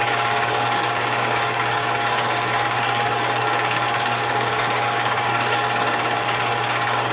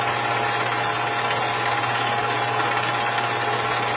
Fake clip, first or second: first